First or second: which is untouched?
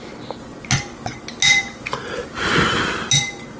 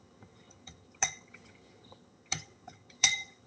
first